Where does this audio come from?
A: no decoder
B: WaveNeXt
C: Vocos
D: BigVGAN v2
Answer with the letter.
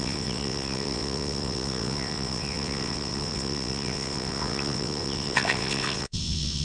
B